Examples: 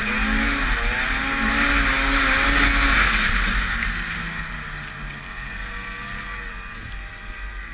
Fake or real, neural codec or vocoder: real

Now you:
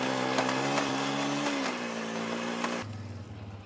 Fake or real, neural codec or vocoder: real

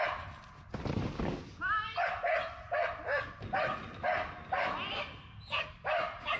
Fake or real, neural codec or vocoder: real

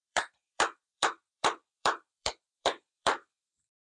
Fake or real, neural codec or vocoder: fake, vocoder, BigVGAN v2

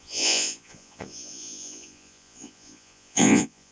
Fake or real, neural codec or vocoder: fake, vocoder, Vocos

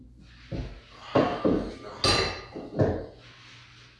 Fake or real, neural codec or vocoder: real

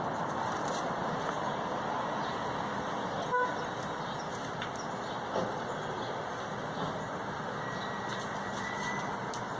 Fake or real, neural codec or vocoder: real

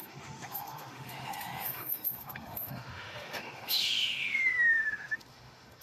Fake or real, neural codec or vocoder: fake, autoencoder, DAC-VAE